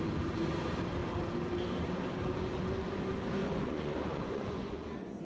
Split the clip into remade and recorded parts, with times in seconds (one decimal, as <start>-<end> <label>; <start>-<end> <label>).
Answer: 0.0-3.4 recorded; 3.4-5.2 remade